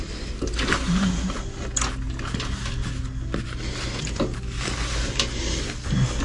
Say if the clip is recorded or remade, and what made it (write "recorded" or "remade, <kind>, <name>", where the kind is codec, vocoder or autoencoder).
recorded